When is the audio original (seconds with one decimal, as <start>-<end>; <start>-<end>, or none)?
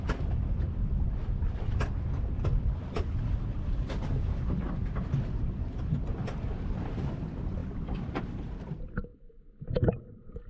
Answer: 0.0-10.5